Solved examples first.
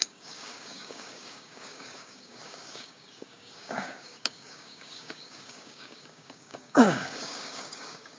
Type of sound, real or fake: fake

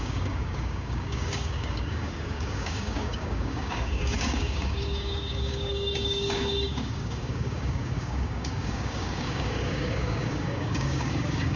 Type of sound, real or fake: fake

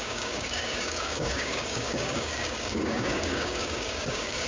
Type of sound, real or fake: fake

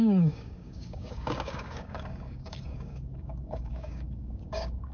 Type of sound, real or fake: fake